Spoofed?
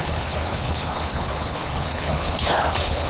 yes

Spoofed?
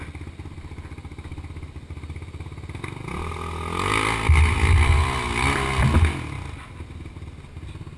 no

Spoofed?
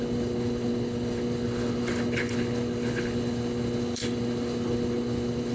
yes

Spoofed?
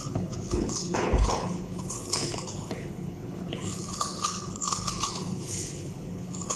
yes